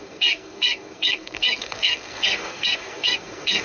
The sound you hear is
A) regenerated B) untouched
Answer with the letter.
A